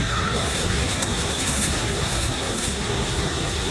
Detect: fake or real fake